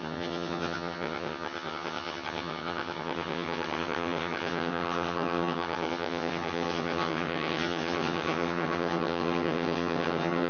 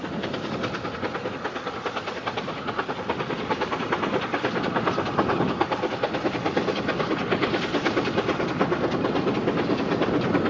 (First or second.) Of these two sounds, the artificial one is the first